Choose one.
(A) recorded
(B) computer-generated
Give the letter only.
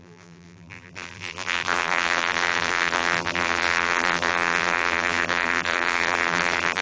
B